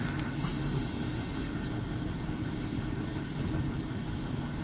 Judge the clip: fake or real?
real